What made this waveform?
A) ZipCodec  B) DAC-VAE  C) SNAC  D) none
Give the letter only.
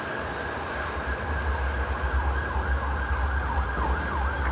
D